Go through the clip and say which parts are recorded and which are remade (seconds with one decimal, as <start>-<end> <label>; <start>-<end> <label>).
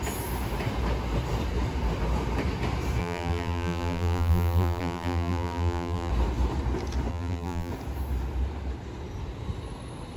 0.0-3.0 recorded; 3.0-6.1 remade; 6.1-7.1 recorded; 7.1-7.7 remade; 7.7-10.2 recorded